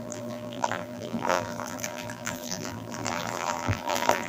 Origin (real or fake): fake